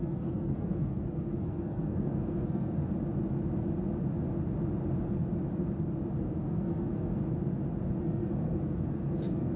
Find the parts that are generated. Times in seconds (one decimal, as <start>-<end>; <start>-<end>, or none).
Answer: 0.0-2.8; 6.2-7.2; 8.0-9.6